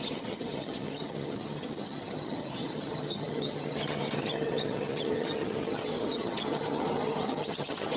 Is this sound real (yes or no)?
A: no